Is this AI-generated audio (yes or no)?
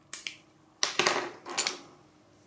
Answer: no